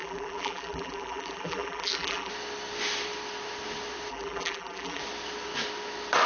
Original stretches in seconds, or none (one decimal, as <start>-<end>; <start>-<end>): 2.3-4.1; 5.0-6.3